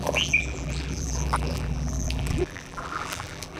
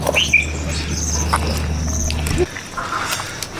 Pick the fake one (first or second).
first